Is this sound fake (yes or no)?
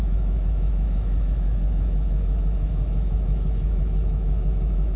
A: yes